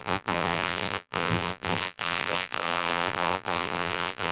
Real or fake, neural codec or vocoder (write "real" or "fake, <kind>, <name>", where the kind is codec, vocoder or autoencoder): fake, vocoder, BigVGAN v2